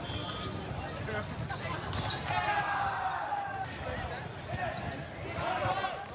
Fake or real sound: real